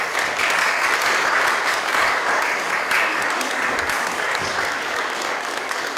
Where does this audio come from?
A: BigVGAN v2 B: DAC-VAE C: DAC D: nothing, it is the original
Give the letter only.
C